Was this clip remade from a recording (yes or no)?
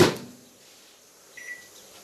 no